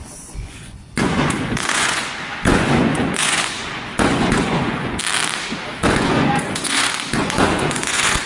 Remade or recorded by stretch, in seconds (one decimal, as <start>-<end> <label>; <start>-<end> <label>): 0.0-5.0 remade; 5.0-5.8 recorded; 5.8-8.3 remade